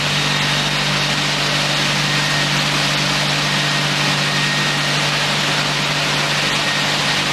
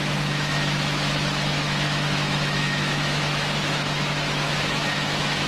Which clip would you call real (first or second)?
first